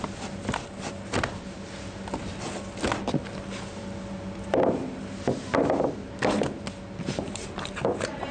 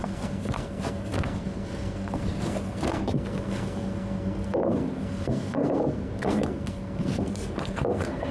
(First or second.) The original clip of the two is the first